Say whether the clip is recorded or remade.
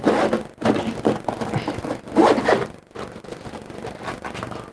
recorded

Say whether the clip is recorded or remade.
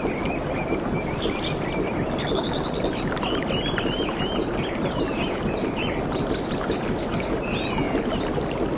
remade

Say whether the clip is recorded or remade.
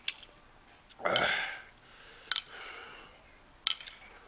recorded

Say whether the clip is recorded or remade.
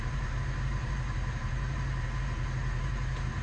remade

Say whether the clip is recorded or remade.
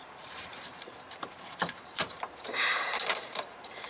remade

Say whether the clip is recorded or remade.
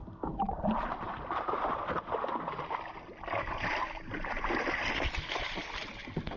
recorded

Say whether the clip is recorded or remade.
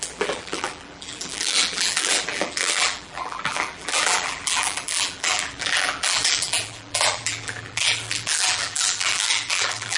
remade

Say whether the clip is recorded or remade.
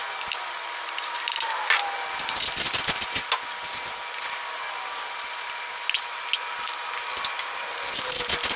recorded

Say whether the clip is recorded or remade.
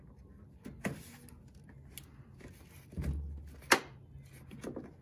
recorded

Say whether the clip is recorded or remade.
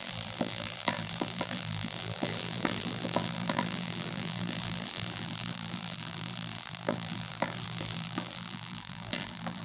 remade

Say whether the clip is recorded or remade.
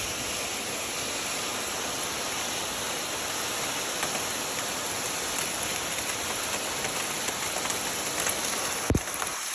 recorded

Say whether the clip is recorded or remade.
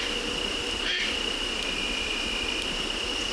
recorded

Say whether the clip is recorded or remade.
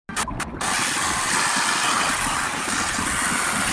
recorded